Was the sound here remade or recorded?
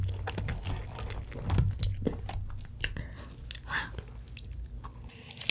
recorded